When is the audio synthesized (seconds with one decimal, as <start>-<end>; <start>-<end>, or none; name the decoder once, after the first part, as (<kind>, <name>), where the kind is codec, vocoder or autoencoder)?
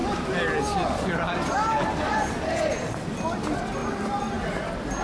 none